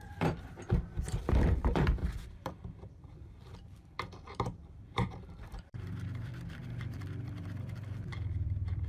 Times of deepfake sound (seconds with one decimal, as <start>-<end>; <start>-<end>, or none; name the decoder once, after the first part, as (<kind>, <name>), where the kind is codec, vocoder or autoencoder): 0.0-8.9 (vocoder, BigVGAN v2)